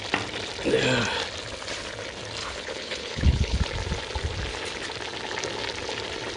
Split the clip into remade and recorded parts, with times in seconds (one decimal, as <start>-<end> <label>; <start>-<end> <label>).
0.0-2.4 recorded; 2.4-3.6 remade; 3.6-6.4 recorded